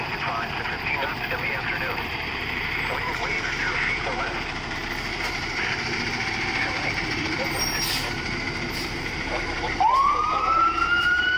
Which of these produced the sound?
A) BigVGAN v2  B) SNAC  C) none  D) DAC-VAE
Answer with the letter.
A